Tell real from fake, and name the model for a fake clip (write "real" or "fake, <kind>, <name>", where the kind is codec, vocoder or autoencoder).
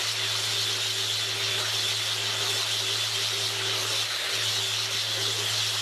real